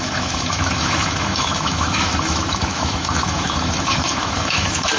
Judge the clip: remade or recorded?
remade